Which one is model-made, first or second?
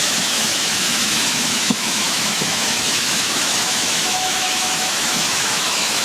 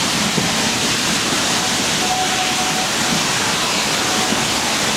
first